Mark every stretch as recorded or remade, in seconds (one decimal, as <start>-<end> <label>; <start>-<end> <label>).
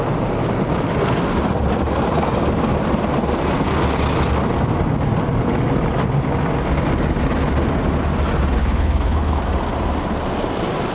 0.0-8.6 recorded; 8.6-9.4 remade; 9.4-10.9 recorded